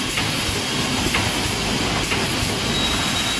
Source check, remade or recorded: recorded